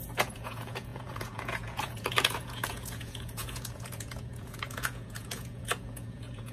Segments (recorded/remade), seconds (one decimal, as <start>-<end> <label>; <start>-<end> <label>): 0.0-6.5 remade

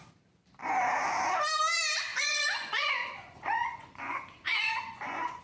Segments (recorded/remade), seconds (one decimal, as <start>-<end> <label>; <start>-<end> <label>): 0.0-2.1 recorded; 2.1-5.4 remade

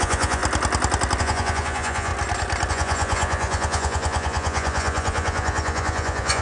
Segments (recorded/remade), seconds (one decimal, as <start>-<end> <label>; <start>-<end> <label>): 0.0-0.4 remade; 0.4-1.2 recorded; 1.2-2.1 remade; 2.1-2.7 recorded; 2.7-6.4 remade

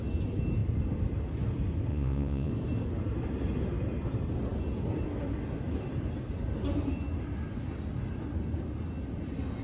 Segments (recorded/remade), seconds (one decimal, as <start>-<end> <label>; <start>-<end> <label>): 0.0-1.9 recorded; 1.9-2.5 remade; 2.5-9.6 recorded

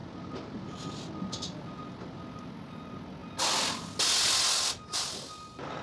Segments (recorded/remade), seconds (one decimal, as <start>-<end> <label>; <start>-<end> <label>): 0.0-5.8 recorded

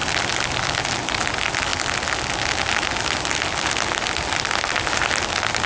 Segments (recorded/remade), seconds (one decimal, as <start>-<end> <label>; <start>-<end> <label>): 0.0-5.7 recorded

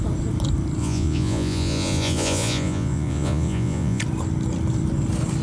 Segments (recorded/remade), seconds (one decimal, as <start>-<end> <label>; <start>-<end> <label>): 0.0-0.8 recorded; 0.8-4.0 remade; 4.0-5.4 recorded